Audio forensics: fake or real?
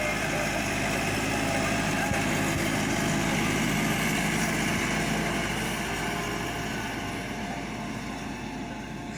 real